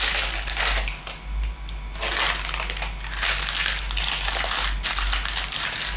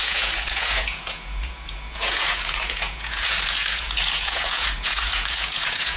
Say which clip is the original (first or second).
first